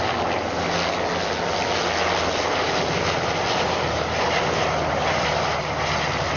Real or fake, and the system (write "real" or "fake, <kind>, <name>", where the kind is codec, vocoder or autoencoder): real